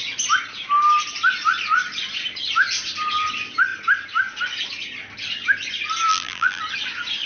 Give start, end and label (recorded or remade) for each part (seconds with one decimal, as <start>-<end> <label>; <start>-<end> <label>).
0.0-6.1 recorded; 6.1-6.6 remade; 6.6-7.3 recorded